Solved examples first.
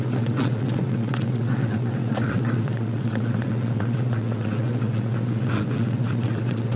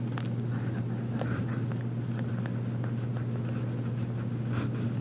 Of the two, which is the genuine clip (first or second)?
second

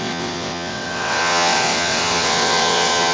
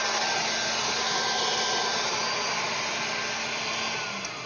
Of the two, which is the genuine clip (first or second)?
second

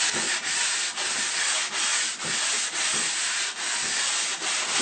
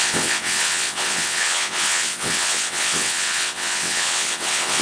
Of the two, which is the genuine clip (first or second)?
first